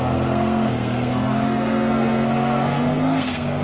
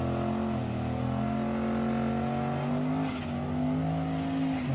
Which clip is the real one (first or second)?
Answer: second